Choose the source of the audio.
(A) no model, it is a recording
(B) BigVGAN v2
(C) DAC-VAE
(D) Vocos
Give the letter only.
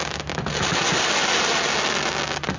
A